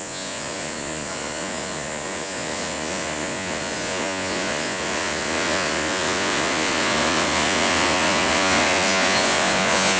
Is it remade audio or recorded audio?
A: remade